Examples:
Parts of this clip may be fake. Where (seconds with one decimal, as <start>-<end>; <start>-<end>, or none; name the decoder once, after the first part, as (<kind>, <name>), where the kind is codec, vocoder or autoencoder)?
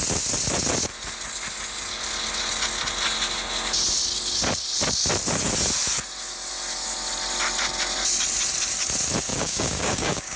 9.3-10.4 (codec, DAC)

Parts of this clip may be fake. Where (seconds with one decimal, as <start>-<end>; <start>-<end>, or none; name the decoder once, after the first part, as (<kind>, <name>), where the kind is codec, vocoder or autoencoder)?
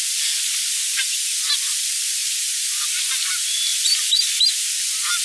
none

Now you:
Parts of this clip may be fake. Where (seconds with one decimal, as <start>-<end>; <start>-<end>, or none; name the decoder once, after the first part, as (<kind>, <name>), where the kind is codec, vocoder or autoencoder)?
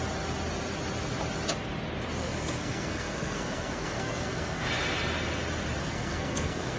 2.2-4.7 (codec, SNAC); 5.8-6.8